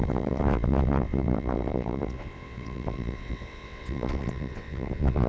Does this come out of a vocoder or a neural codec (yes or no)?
yes